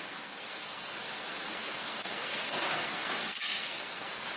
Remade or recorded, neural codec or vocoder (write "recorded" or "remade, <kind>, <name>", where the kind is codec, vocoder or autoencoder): remade, codec, SNAC